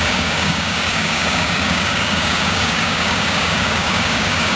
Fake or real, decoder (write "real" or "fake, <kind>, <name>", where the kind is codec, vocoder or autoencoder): fake, codec, DAC